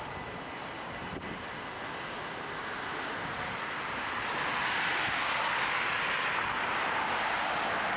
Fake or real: real